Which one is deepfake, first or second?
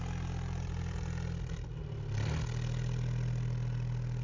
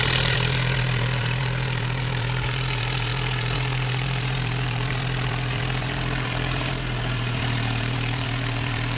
second